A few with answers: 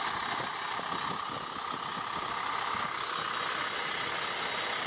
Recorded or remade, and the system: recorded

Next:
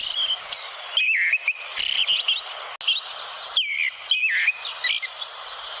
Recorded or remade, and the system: recorded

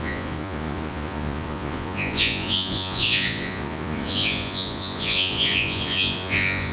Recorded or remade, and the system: remade, vocoder, Vocos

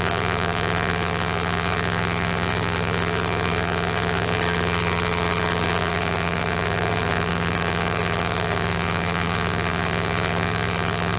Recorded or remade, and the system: remade, vocoder, BigVGAN v2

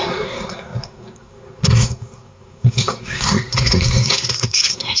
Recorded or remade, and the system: remade, codec, SNAC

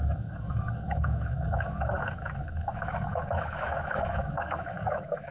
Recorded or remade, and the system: remade, autoencoder, DAC-VAE